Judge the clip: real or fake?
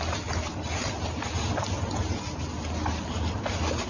real